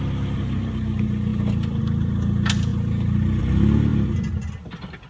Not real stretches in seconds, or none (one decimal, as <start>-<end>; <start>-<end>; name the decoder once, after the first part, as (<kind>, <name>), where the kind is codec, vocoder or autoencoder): none